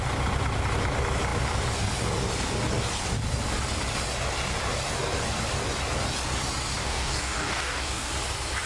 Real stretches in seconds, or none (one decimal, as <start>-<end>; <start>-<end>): 0.0-6.8; 8.1-8.7